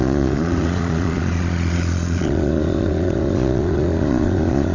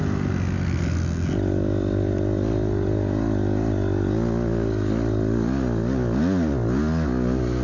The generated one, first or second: first